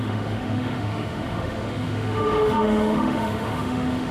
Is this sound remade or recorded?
remade